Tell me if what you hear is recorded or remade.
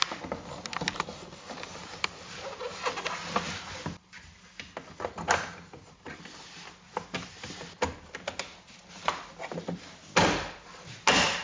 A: recorded